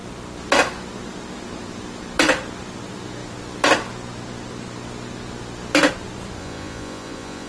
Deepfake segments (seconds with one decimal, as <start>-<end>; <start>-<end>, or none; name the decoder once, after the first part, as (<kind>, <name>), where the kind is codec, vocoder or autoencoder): 6.4-7.5 (vocoder, Vocos)